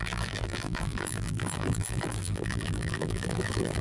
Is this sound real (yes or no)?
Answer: no